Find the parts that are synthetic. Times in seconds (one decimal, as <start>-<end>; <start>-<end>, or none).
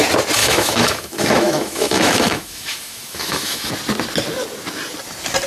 0.4-3.7